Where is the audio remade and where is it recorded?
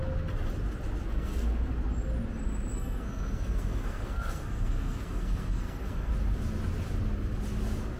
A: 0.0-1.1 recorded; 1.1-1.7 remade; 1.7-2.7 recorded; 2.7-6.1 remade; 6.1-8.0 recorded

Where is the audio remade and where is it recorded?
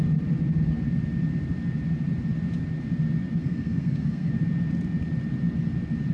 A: 0.0-3.4 recorded; 3.4-4.3 remade; 4.3-6.1 recorded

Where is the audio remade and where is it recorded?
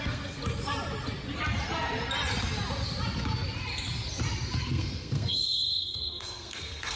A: 0.0-0.4 remade; 0.4-4.6 recorded; 4.6-7.0 remade